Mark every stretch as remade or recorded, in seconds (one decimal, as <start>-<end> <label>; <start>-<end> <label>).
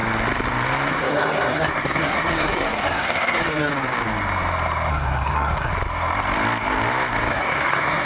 0.0-0.9 recorded; 0.9-3.7 remade; 3.7-4.9 recorded; 4.9-5.7 remade; 5.7-7.3 recorded; 7.3-8.1 remade